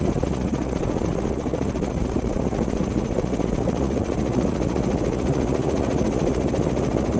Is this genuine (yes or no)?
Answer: no